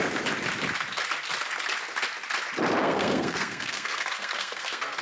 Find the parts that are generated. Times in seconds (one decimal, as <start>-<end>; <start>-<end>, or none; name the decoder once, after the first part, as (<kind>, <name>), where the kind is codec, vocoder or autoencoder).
2.8-5.0 (codec, SNAC)